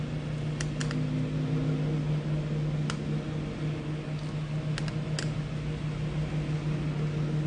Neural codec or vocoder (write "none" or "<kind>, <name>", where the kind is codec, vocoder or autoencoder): none